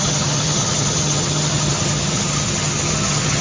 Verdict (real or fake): fake